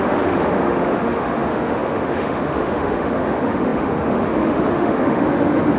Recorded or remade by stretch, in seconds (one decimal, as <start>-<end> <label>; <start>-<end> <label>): 0.0-5.8 remade